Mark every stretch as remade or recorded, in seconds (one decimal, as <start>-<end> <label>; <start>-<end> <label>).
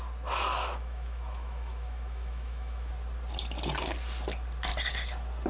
0.0-0.5 recorded; 0.5-2.9 remade; 2.9-5.5 recorded